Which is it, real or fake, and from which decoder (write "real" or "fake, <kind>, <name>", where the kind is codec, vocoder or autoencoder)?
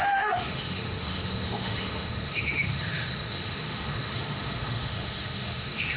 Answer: fake, autoencoder, DAC-VAE